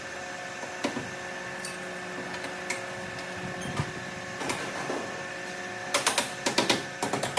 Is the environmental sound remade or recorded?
recorded